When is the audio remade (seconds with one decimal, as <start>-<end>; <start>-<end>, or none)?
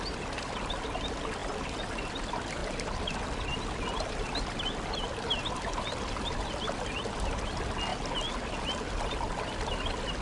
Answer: none